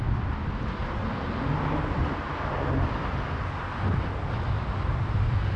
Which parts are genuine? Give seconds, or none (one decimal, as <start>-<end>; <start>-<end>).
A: 0.0-0.8; 3.4-5.6